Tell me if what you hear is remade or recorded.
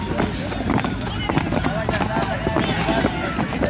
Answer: recorded